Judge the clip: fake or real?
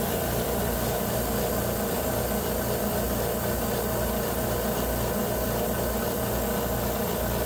real